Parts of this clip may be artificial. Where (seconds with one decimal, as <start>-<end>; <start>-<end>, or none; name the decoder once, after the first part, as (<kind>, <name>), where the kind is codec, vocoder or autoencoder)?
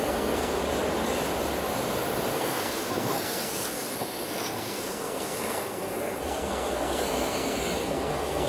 0.0-0.6 (codec, SNAC); 2.3-8.5